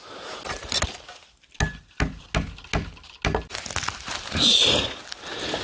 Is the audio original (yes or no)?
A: yes